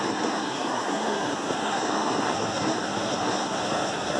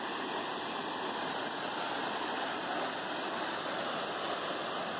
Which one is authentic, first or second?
second